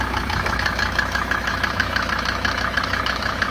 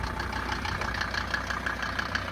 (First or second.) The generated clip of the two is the first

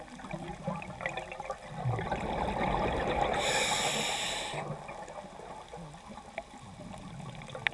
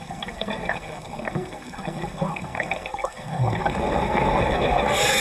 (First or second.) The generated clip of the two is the second